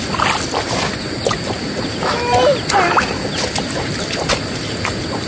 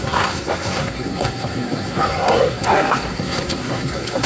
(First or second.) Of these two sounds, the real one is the first